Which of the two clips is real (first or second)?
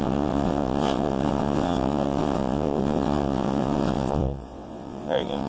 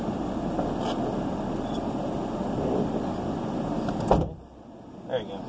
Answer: second